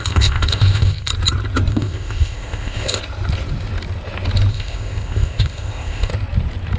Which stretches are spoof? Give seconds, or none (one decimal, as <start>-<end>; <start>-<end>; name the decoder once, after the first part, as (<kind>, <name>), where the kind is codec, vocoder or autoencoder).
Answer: 0.0-1.1 (codec, ZipCodec); 1.7-3.0; 4.5-6.1

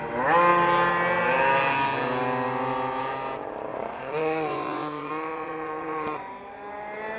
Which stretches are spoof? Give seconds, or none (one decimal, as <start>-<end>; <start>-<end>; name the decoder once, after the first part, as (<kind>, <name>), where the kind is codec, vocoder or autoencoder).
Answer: 3.7-6.3 (vocoder, Vocos)

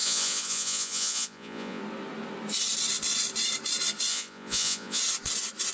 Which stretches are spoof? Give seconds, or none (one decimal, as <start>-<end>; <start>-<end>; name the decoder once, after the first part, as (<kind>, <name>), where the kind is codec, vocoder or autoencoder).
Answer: 0.0-1.8 (vocoder, Vocos); 4.1-5.0

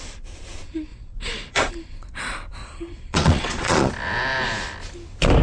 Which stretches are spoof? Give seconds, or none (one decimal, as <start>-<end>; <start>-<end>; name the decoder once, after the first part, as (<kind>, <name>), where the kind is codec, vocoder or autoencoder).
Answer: 0.9-1.7 (vocoder, Vocos); 2.6-3.9

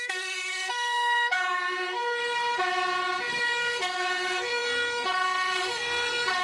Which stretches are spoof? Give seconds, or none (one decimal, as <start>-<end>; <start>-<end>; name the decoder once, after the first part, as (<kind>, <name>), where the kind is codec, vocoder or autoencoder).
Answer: 0.0-2.2 (codec, SNAC); 3.4-6.4

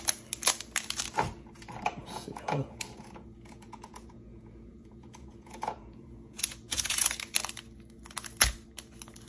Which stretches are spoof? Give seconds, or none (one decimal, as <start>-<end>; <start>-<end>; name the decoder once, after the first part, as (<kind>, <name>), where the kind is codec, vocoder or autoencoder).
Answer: 2.0-7.1 (vocoder, Vocos)